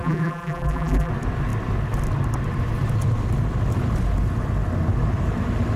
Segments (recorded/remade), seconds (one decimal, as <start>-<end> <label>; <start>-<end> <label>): 0.0-1.1 remade; 1.1-5.8 recorded